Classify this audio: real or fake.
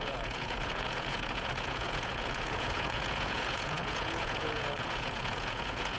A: fake